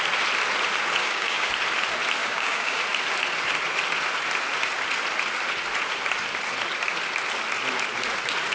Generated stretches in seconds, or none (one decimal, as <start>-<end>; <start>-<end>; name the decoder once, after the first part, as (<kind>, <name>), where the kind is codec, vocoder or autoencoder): 1.0-1.5 (codec, DAC); 2.2-2.8